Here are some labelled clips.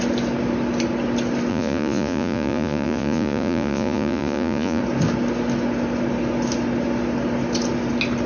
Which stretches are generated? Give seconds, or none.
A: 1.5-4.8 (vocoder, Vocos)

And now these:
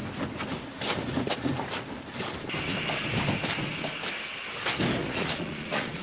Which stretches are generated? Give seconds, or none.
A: 5.0-6.0 (vocoder, Vocos)